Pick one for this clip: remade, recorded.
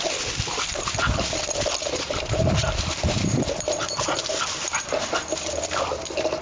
remade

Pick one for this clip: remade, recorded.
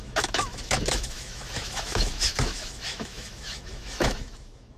remade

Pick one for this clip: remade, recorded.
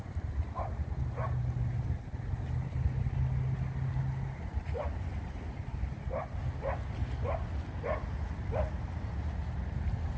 recorded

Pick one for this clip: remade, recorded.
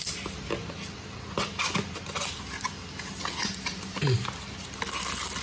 recorded